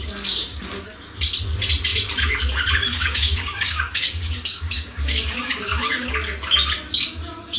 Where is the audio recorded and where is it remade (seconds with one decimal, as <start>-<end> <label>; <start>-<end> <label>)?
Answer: 0.0-2.8 recorded; 2.8-6.1 remade; 6.1-7.6 recorded